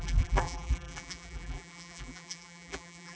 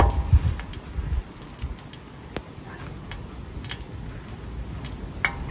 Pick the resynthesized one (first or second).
first